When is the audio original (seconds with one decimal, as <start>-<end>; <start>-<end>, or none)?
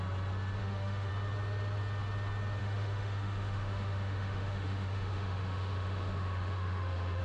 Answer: 0.0-0.6; 1.1-2.6